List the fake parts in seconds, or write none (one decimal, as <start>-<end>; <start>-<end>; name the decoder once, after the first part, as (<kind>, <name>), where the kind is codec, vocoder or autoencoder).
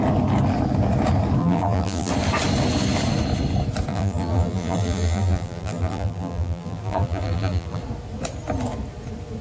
1.4-2.1 (vocoder, BigVGAN v2); 3.9-7.8